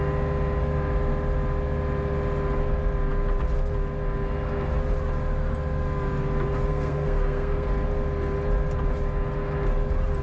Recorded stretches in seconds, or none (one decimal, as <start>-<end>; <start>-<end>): 0.0-6.7; 7.7-10.2